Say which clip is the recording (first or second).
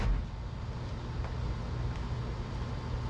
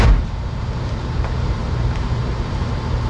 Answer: first